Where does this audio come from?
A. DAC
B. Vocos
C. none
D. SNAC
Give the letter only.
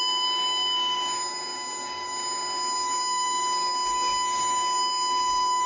A